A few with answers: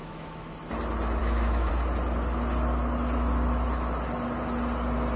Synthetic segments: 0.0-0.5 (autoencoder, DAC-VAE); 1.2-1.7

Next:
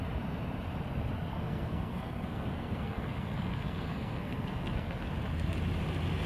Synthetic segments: 1.3-5.1 (codec, SNAC)

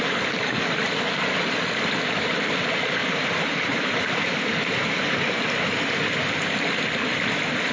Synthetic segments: 3.0-5.6 (vocoder, BigVGAN v2)

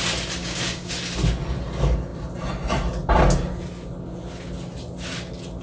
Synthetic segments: 0.4-0.9 (codec, DAC)

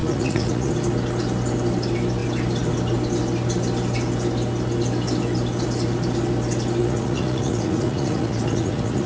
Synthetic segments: 0.0-0.7 (vocoder, Vocos); 6.8-9.1

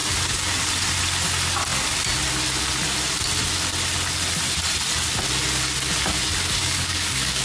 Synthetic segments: 6.6-7.4 (codec, DAC)